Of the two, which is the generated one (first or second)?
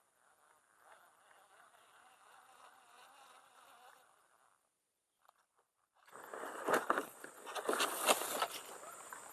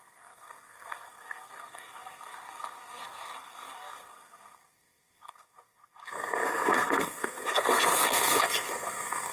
second